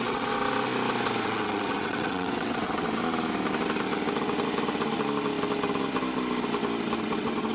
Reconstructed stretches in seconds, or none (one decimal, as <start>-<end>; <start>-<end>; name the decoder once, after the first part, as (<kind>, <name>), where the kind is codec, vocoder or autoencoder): 0.0-0.4 (vocoder, WaveNeXt); 1.2-3.0; 7.0-7.5